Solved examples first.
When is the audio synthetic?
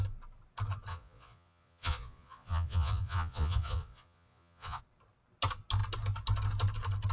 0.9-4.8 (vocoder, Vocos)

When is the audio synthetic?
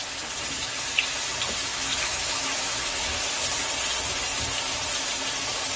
1.7-3.2 (autoencoder, DAC-VAE)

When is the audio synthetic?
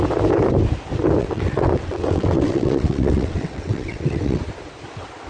1.2-4.4 (vocoder, WaveNeXt)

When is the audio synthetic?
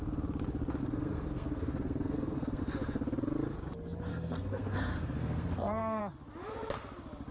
0.8-2.6 (codec, SNAC); 4.1-6.0